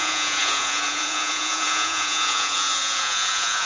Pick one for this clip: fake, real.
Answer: fake